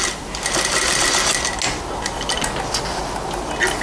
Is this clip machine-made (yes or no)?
no